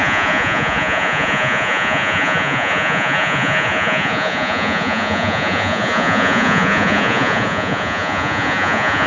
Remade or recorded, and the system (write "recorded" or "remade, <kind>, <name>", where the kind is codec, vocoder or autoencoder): remade, vocoder, Vocos